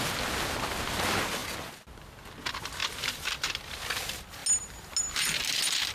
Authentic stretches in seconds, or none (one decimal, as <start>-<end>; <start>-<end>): 0.0-5.9